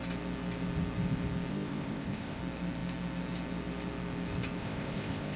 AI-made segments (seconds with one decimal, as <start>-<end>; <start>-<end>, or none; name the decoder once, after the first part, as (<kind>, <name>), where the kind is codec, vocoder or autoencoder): 1.5-2.4 (codec, ZipCodec); 4.6-5.4